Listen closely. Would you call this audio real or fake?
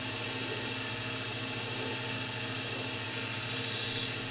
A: real